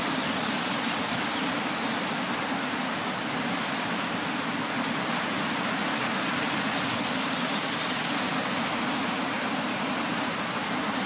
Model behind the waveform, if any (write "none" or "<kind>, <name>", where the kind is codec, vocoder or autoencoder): none